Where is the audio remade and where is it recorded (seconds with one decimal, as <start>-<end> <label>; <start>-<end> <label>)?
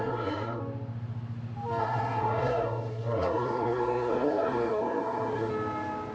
0.0-0.6 remade; 0.6-1.8 recorded; 1.8-5.5 remade; 5.5-6.1 recorded